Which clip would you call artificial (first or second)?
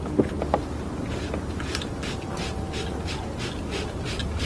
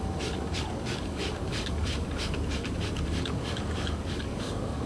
second